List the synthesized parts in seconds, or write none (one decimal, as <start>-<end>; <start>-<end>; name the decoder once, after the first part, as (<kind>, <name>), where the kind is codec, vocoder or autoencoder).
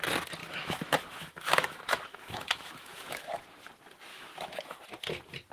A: 0.4-3.3 (autoencoder, DAC-VAE); 4.1-4.8